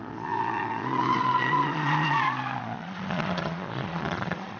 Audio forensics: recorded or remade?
remade